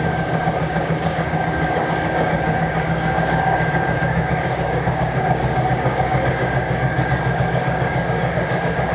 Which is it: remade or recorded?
remade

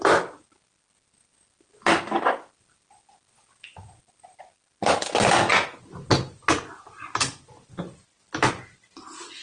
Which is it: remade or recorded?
recorded